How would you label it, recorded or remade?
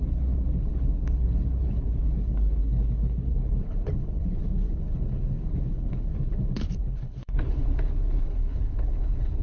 remade